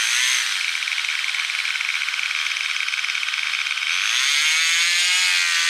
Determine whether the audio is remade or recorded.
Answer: recorded